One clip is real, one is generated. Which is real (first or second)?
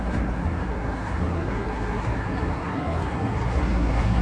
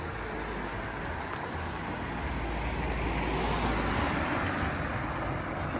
second